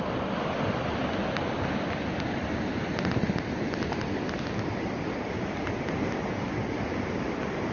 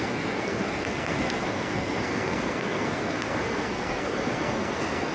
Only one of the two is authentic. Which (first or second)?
first